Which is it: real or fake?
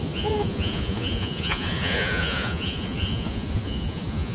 fake